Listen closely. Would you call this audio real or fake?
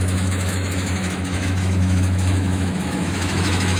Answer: fake